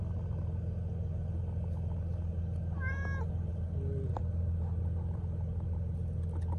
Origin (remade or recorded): recorded